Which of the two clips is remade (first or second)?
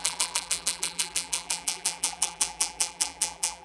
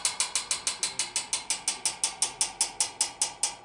first